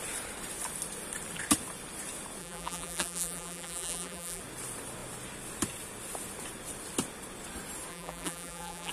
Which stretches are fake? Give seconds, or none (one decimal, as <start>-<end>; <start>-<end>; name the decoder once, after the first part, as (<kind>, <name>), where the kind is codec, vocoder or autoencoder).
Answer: 2.4-4.4 (vocoder, BigVGAN v2); 7.9-8.9